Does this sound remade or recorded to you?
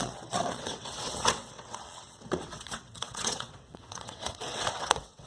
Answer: remade